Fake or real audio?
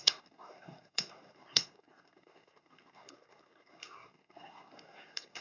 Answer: fake